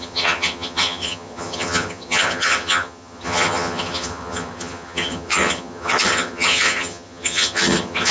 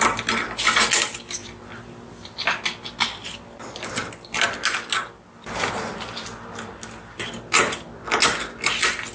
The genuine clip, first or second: second